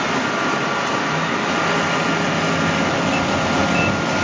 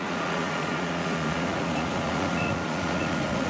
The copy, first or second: second